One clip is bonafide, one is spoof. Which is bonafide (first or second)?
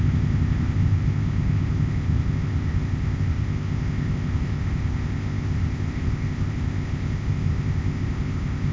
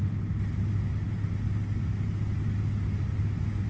second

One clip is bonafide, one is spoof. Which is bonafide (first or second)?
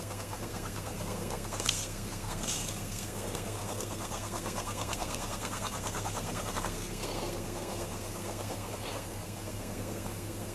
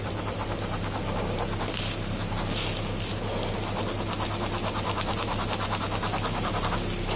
second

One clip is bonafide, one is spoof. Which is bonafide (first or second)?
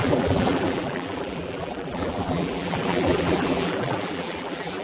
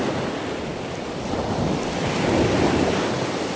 second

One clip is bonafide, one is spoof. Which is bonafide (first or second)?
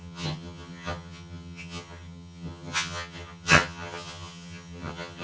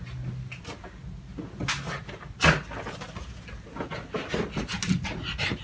second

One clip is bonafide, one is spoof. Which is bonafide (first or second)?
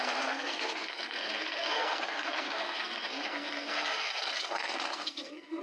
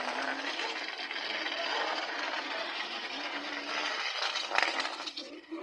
second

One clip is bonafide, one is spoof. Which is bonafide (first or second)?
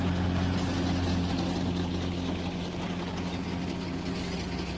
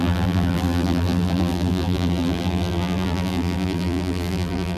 first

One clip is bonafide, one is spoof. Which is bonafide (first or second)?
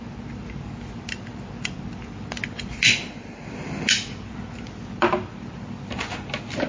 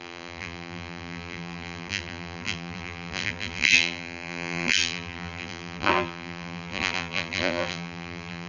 first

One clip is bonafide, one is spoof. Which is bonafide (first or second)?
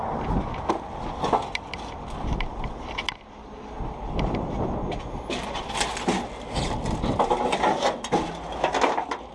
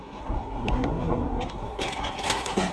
first